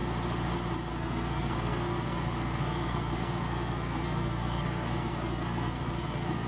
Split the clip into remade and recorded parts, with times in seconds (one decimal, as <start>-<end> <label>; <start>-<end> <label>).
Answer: 0.0-0.9 recorded; 0.9-6.5 remade